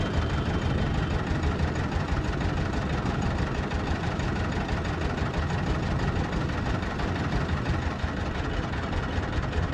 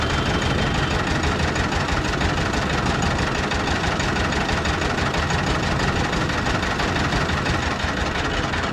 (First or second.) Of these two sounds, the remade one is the first